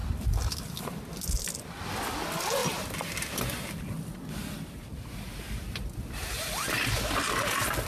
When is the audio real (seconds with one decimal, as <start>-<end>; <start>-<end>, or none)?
0.0-7.9